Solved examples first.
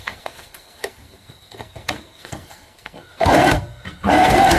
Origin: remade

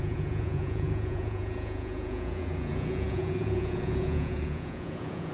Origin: remade